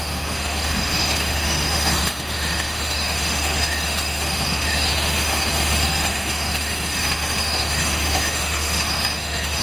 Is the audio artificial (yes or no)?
yes